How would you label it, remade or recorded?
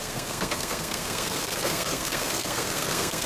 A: remade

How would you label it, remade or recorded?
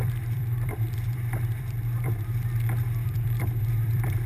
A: remade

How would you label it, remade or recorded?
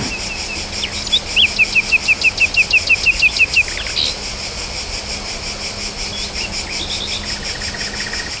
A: recorded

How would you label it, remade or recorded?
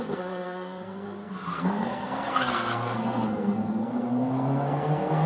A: remade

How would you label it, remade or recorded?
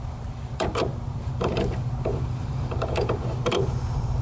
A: remade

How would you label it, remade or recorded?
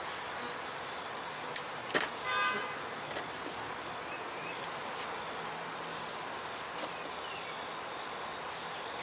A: recorded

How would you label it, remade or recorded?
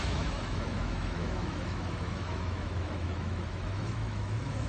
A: remade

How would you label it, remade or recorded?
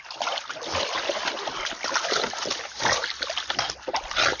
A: remade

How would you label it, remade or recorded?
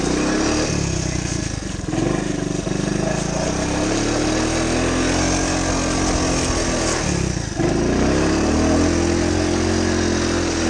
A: recorded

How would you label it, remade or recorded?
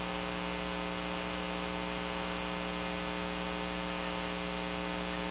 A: recorded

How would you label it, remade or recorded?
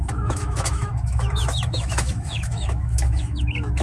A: remade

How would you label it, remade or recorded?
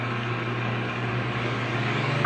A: remade